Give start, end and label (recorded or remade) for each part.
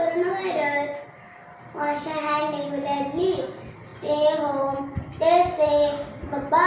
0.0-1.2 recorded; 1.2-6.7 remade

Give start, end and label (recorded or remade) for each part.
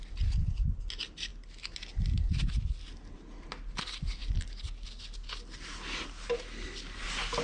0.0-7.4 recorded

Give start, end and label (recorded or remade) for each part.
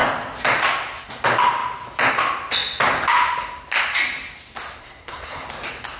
0.0-4.8 recorded; 4.8-5.5 remade; 5.5-6.0 recorded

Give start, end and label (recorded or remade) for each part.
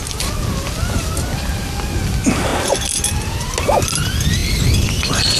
0.0-5.4 recorded